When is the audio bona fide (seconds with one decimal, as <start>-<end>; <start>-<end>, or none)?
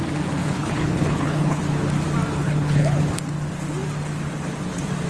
0.0-0.4; 1.6-2.3; 3.0-5.1